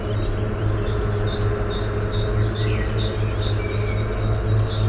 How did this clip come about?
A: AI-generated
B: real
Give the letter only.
B